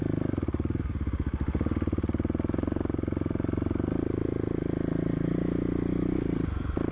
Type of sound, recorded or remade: recorded